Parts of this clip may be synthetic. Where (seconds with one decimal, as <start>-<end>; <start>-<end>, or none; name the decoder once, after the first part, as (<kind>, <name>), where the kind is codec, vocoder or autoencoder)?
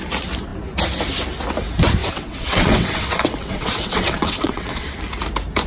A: 2.0-5.0 (vocoder, WaveNeXt)